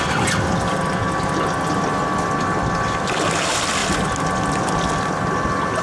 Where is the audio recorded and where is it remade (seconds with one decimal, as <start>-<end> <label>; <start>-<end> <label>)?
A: 0.0-5.8 recorded